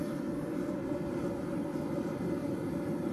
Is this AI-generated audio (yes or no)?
no